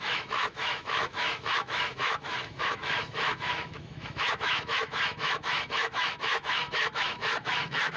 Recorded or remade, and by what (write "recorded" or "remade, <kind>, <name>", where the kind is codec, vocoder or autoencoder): remade, autoencoder, DAC-VAE